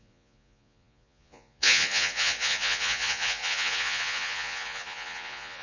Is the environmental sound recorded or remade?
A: remade